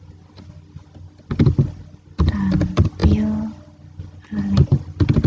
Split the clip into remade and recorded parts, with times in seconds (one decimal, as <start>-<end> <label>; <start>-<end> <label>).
0.0-5.3 recorded